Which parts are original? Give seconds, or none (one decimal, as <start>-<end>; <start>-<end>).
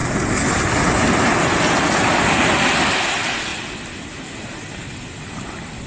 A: 0.0-5.9